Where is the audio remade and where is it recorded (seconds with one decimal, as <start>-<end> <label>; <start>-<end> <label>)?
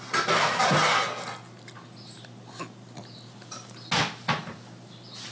0.0-5.3 recorded